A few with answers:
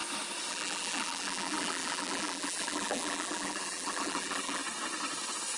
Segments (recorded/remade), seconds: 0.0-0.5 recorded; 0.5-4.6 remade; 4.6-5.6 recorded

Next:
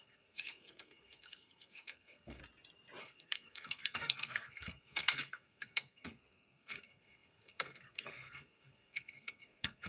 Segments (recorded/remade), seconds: 0.0-2.4 remade; 2.4-3.0 recorded; 3.0-9.9 remade

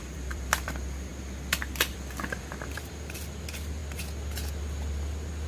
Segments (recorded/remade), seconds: 0.0-1.1 remade; 1.1-1.9 recorded; 1.9-3.8 remade; 3.8-5.5 recorded

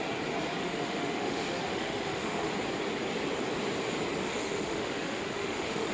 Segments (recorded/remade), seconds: 0.0-0.6 recorded; 0.6-2.5 remade; 2.5-4.2 recorded; 4.2-5.9 remade

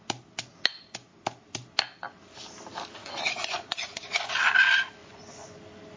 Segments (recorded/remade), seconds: 0.0-3.0 recorded; 3.0-4.3 remade; 4.3-5.0 recorded; 5.0-5.6 remade; 5.6-6.0 recorded